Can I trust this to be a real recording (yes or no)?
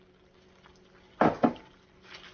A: yes